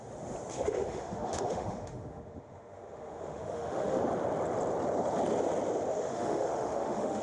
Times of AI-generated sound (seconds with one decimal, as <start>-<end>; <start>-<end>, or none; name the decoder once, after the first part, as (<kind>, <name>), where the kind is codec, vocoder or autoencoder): 0.5-4.0 (autoencoder, DAC-VAE); 5.9-7.2